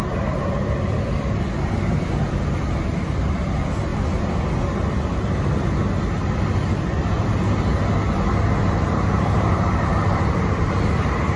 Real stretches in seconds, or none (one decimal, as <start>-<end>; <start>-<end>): 0.0-8.6; 10.9-11.4